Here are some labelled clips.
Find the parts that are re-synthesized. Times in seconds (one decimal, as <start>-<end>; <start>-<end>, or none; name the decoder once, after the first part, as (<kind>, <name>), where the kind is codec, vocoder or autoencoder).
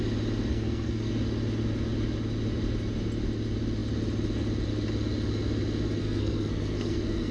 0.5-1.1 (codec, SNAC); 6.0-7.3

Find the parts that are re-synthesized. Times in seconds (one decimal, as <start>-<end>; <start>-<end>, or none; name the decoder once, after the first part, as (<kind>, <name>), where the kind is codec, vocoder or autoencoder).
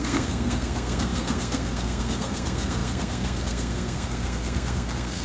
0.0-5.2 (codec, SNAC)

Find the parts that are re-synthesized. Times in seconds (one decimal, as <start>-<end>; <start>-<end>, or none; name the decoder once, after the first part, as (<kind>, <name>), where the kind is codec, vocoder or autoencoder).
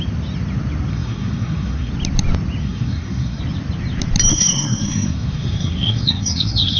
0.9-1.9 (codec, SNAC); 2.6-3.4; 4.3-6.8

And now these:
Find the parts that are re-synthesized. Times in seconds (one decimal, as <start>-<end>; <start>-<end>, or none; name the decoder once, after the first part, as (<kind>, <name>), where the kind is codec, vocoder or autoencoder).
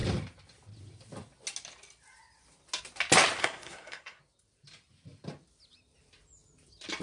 3.4-4.2 (codec, SNAC)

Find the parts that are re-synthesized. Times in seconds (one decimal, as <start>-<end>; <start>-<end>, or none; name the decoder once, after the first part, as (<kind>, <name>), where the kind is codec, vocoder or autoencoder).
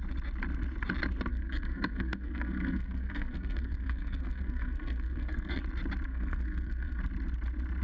1.3-5.6 (codec, SNAC); 6.1-7.0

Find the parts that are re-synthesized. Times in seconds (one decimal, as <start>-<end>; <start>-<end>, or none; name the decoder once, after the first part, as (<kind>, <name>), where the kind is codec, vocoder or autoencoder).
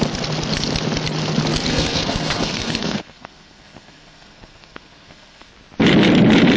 1.7-5.5 (codec, SNAC)